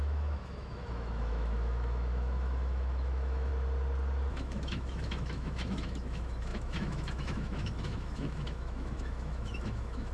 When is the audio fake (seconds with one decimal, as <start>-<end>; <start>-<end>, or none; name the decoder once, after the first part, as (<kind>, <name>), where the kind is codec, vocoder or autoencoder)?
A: 0.0-3.5 (autoencoder, DAC-VAE); 4.3-10.1